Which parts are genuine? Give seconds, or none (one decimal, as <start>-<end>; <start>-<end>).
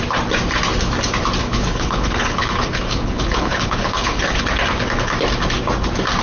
0.0-1.4; 4.5-6.2